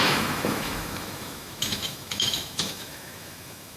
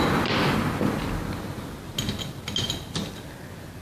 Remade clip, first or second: first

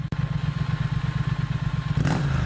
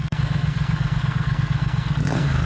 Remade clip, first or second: second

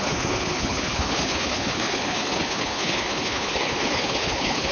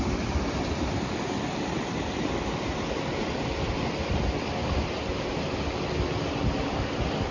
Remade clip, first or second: first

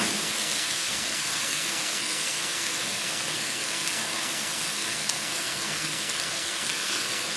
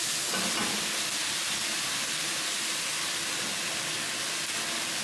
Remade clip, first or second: first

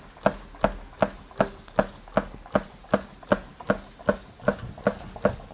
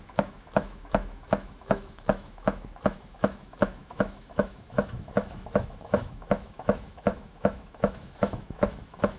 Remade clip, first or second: second